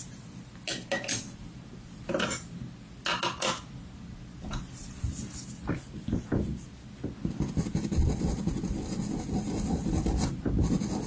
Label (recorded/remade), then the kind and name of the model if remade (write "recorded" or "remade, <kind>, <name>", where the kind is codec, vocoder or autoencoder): recorded